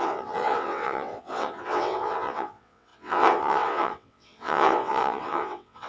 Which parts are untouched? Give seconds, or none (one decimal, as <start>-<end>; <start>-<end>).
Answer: none